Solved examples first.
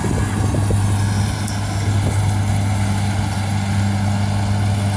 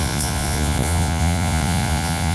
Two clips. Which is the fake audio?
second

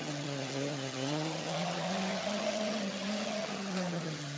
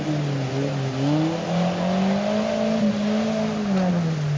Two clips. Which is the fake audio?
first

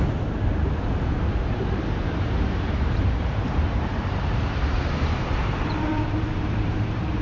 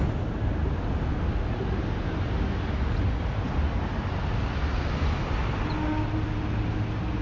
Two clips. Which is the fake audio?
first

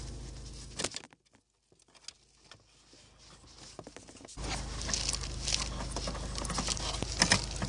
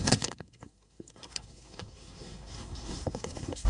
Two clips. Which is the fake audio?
second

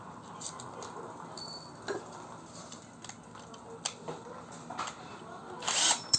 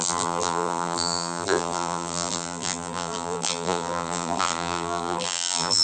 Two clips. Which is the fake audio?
second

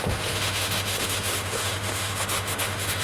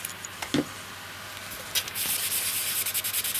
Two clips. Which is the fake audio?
first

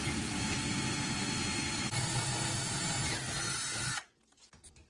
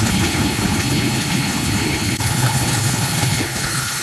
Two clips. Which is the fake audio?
second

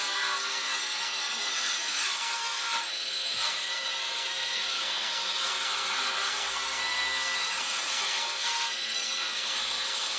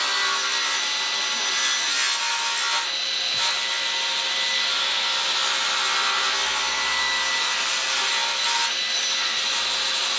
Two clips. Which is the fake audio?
first